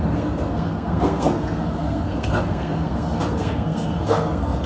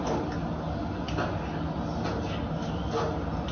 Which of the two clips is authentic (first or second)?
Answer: second